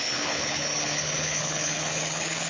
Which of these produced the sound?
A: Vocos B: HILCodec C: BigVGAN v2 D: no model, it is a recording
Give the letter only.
B